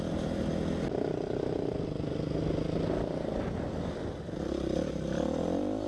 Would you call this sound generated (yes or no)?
no